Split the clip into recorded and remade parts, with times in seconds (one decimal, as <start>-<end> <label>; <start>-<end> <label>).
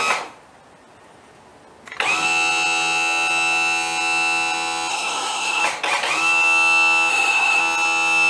0.0-4.9 recorded; 4.9-5.6 remade; 5.6-7.1 recorded; 7.1-7.6 remade; 7.6-8.3 recorded